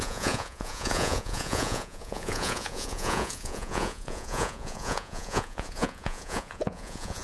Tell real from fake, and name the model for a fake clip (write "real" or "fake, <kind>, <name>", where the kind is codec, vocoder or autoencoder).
fake, vocoder, Vocos